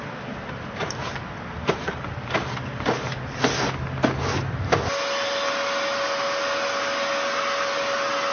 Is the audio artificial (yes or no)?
no